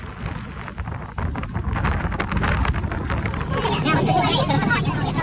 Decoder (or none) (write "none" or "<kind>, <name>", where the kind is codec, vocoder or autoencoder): none